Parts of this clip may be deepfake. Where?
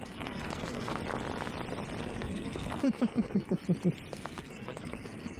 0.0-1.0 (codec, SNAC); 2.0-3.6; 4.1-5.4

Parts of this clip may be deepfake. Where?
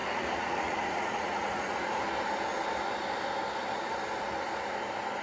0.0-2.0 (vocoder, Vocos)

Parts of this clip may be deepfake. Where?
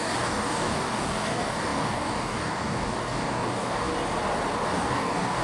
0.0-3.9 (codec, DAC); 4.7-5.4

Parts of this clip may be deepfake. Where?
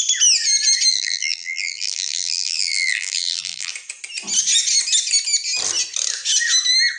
0.9-3.7 (vocoder, BigVGAN v2)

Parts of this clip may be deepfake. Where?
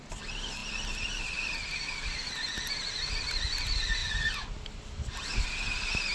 0.6-2.2 (vocoder, BigVGAN v2)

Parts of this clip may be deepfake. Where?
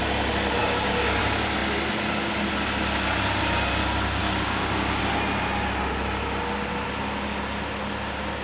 0.6-1.2 (codec, DAC); 4.2-5.0